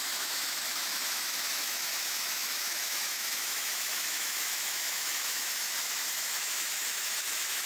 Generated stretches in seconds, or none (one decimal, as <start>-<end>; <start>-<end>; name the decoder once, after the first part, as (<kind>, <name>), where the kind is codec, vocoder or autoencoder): 0.0-7.7 (autoencoder, DAC-VAE)